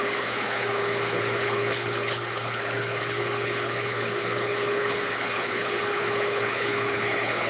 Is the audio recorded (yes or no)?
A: no